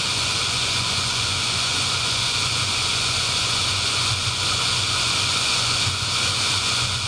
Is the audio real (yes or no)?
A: no